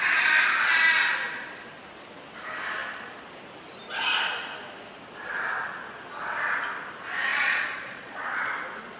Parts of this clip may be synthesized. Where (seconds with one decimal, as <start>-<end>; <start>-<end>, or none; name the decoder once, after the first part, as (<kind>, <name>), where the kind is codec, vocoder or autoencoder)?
7.3-8.5 (vocoder, Vocos)